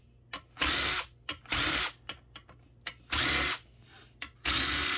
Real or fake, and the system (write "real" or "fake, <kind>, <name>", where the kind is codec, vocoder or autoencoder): real